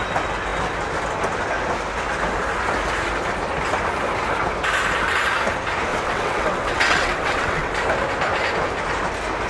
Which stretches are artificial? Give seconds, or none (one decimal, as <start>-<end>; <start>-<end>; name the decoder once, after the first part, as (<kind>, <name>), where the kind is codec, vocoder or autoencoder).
5.9-7.7 (vocoder, WaveNeXt)